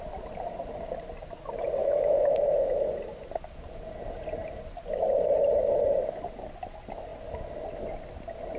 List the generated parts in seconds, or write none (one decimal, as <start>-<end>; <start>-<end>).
1.8-2.9